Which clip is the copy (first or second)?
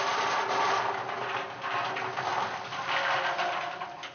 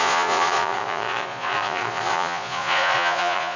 second